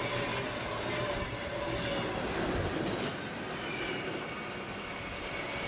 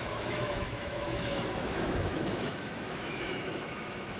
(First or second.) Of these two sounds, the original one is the first